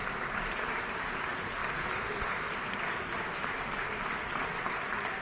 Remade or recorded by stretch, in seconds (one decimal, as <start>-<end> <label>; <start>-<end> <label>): 0.0-1.1 remade; 1.1-1.6 recorded; 1.6-4.7 remade; 4.7-5.2 recorded